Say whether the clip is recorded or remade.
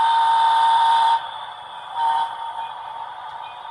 remade